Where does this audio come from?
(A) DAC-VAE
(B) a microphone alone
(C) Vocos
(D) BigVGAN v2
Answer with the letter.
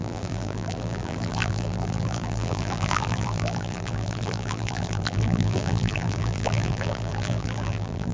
D